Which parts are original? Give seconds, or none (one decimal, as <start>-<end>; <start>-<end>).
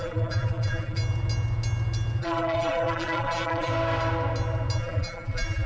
1.0-2.2; 3.7-4.8